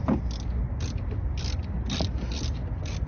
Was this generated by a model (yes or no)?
no